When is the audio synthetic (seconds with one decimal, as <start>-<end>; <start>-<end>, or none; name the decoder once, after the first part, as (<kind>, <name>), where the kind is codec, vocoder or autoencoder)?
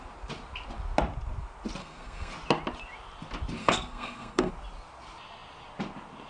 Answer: 1.8-2.3 (codec, SNAC); 3.6-4.5